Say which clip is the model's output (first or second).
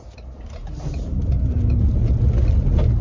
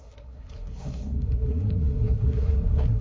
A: second